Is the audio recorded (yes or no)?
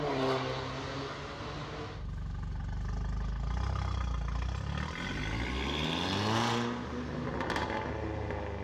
yes